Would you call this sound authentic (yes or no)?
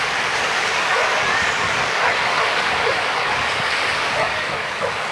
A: no